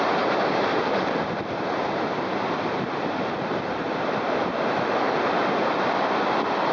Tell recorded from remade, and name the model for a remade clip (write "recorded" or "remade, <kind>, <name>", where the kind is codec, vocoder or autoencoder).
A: remade, vocoder, BigVGAN v2